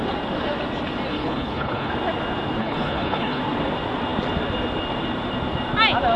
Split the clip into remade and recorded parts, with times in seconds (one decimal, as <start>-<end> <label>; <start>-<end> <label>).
0.0-1.1 recorded; 1.1-1.9 remade; 1.9-2.6 recorded; 2.6-3.4 remade; 3.4-6.2 recorded